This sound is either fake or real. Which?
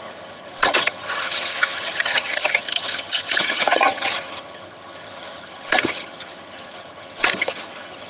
fake